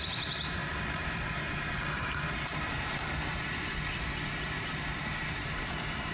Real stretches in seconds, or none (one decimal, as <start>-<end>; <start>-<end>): 0.6-2.8